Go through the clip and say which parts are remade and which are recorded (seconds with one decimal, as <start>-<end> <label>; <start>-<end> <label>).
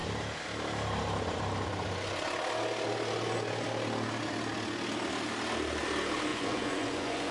0.0-6.3 recorded; 6.3-7.3 remade